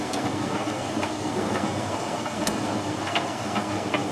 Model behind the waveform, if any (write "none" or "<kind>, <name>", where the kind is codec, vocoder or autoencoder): codec, SNAC